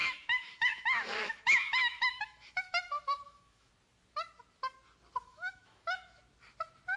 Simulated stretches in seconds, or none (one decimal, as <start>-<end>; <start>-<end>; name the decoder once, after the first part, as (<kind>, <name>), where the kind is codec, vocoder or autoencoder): 0.0-3.7 (autoencoder, DAC-VAE); 5.2-6.2